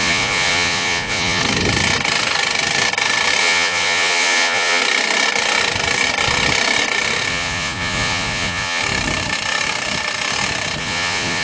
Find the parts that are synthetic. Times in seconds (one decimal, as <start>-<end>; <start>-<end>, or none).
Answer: 0.0-1.4; 3.4-4.8; 7.3-8.8; 10.8-11.4

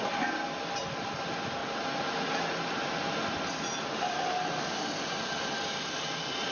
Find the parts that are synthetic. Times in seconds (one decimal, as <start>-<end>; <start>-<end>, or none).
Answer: none